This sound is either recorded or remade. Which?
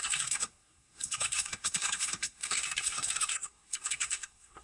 remade